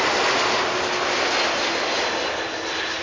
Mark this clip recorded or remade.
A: recorded